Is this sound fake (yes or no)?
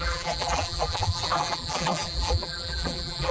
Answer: yes